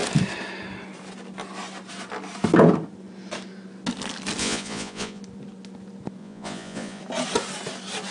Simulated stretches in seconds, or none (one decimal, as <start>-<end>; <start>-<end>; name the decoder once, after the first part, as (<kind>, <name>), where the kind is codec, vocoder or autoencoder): 4.4-5.2 (vocoder, Vocos); 6.2-7.0